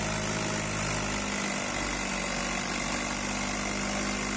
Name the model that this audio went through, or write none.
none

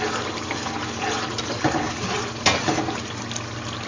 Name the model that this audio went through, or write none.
none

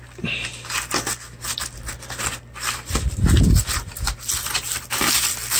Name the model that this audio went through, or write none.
none